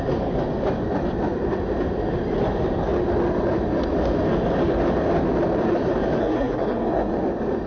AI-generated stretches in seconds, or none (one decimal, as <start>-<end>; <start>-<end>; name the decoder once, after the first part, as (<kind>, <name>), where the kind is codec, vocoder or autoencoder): 6.2-7.1 (codec, SNAC)